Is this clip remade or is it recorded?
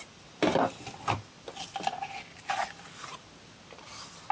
recorded